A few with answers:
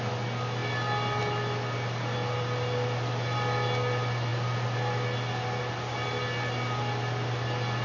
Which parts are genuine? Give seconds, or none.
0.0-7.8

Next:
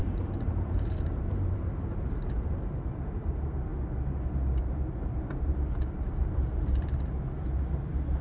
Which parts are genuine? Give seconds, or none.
3.7-4.6

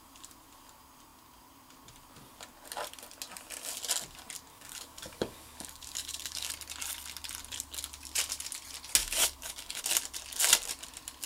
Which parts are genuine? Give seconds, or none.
0.0-4.5; 6.5-9.0; 9.8-11.3

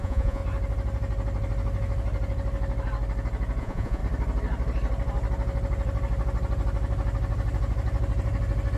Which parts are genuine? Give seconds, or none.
0.4-3.6; 4.0-8.8

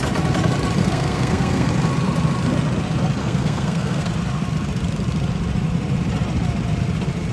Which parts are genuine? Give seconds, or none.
0.0-0.8; 1.7-3.2; 4.1-7.3

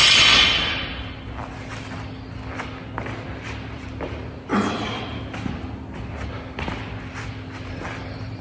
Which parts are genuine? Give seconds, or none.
0.0-8.4

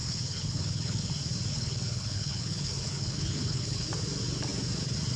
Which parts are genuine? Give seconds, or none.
1.1-1.5; 3.9-5.2